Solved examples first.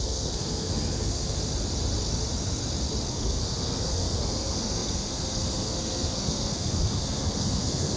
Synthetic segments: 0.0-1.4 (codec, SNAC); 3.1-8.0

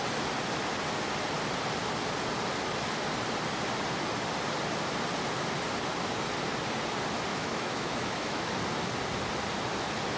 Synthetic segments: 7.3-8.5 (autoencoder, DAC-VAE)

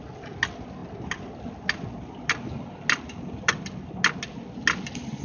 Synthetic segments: none